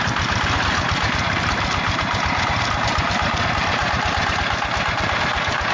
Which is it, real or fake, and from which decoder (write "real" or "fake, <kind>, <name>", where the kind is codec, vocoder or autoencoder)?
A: real